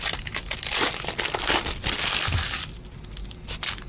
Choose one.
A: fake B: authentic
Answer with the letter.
B